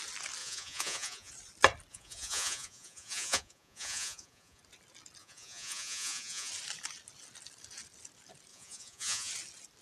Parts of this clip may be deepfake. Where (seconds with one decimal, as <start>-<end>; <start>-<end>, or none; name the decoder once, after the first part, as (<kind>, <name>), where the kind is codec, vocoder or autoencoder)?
0.4-1.3 (vocoder, Vocos); 1.9-4.6; 5.2-6.5; 8.5-9.3